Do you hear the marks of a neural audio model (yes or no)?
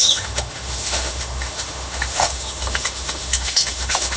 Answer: yes